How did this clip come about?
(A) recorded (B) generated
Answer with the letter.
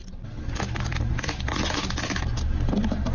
A